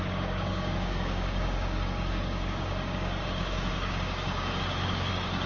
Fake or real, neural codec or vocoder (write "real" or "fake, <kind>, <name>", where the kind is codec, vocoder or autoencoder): fake, codec, DAC